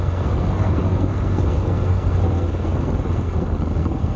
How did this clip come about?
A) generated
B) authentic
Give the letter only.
A